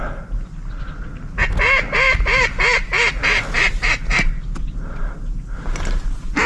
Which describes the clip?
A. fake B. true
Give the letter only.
B